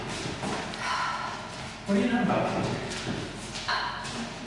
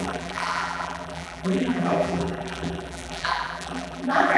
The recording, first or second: first